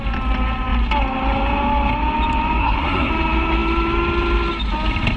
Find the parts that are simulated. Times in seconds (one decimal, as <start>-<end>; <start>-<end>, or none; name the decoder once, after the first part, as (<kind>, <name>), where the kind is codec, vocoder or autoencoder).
2.6-3.1 (codec, SNAC)